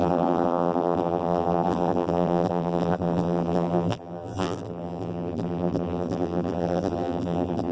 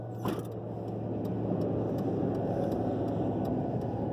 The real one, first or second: second